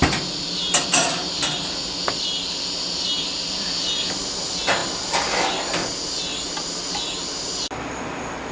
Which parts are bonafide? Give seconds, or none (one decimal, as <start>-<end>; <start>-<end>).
0.0-8.5